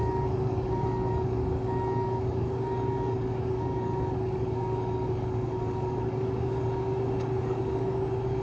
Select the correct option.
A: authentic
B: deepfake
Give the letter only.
B